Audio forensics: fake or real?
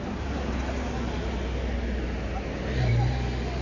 real